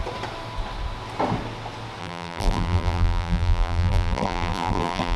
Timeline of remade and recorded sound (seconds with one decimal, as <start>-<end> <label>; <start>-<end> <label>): 0.0-2.0 recorded; 2.0-5.2 remade